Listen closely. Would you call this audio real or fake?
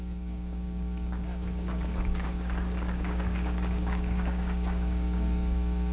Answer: fake